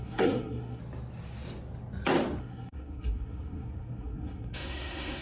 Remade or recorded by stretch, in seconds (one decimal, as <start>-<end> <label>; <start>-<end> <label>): 0.0-0.8 remade; 0.8-2.4 recorded; 2.4-5.2 remade